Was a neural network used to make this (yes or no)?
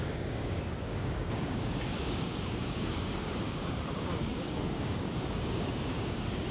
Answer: yes